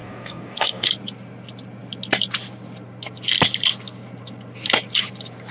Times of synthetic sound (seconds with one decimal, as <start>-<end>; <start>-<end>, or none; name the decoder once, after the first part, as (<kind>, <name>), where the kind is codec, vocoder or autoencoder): 0.0-0.9 (codec, DAC)